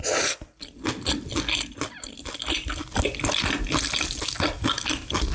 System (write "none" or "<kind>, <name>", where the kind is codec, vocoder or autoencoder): none